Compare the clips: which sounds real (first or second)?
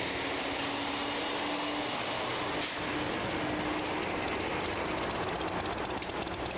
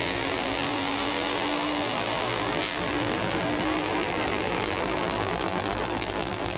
first